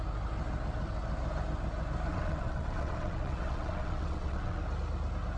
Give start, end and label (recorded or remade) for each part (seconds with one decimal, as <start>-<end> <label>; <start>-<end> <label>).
0.0-2.1 recorded; 2.1-4.6 remade; 4.6-5.4 recorded